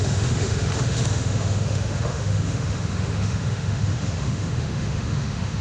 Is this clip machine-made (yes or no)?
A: yes